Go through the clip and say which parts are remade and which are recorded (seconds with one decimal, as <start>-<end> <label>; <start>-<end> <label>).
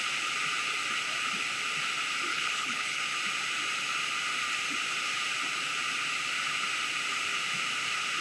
0.0-2.3 recorded; 2.3-3.0 remade; 3.0-8.2 recorded